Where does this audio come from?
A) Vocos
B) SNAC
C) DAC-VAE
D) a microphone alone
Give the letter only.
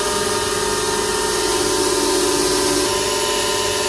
D